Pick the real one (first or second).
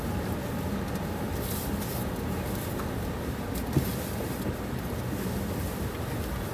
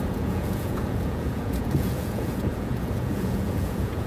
first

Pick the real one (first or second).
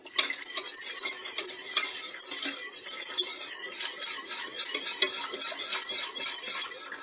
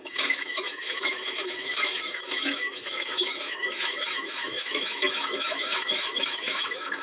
first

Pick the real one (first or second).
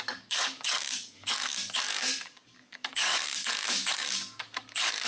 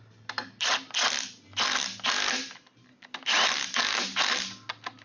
second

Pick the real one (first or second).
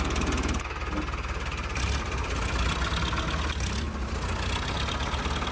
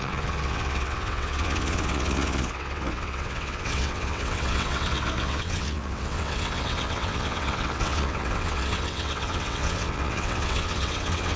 first